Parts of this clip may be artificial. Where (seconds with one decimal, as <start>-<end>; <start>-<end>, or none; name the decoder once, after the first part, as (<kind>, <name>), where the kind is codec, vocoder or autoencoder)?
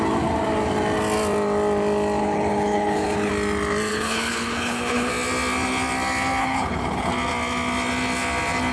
2.2-3.3 (codec, HILCodec); 3.9-5.1; 6.4-7.1